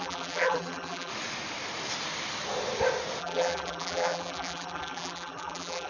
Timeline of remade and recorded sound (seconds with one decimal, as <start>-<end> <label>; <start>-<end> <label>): 0.0-1.1 remade; 1.1-3.2 recorded; 3.2-5.9 remade